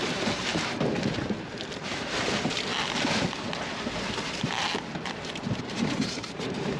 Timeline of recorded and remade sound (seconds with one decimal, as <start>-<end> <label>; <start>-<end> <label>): 0.0-0.5 remade; 0.5-1.8 recorded; 1.8-2.7 remade; 2.7-5.6 recorded; 5.6-6.8 remade